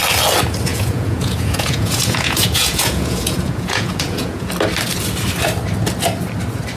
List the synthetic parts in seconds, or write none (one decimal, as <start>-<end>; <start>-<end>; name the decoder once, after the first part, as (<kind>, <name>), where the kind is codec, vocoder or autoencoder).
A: 0.7-4.5 (vocoder, Vocos)